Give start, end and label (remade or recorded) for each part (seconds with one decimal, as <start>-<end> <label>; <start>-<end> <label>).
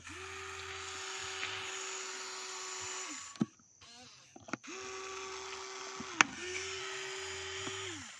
0.0-6.3 recorded; 6.3-6.8 remade; 6.8-8.2 recorded